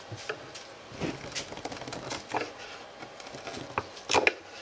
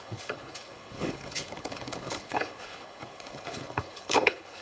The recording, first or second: first